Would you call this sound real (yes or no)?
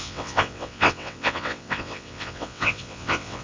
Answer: no